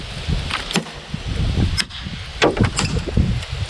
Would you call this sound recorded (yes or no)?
yes